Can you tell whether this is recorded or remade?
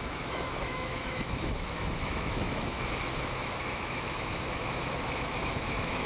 remade